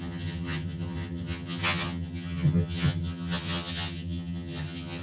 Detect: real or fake fake